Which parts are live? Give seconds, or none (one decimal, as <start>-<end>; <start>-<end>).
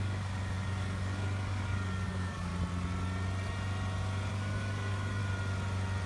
2.5-4.3; 5.2-6.1